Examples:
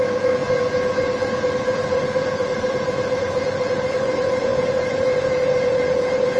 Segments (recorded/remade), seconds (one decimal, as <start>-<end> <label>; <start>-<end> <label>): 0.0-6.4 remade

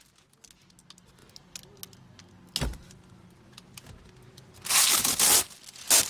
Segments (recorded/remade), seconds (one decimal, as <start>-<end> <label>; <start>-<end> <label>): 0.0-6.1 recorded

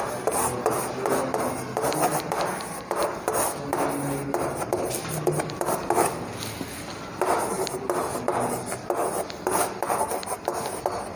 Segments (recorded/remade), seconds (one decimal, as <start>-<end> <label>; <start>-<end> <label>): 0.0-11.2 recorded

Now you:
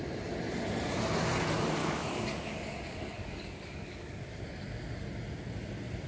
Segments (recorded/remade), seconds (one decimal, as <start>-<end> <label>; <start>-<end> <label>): 0.0-1.8 recorded; 1.8-4.4 remade; 4.4-6.1 recorded

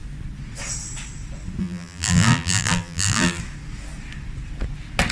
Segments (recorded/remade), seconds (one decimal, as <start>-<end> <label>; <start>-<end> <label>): 0.0-1.6 recorded; 1.6-3.4 remade; 3.4-5.1 recorded